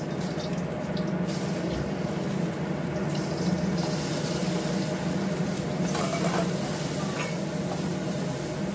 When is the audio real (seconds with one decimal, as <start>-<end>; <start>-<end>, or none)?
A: 0.0-8.7